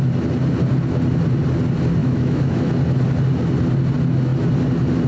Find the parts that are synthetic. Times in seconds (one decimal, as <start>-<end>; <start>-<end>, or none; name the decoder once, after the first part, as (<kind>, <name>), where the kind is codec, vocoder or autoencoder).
2.0-2.7 (autoencoder, DAC-VAE)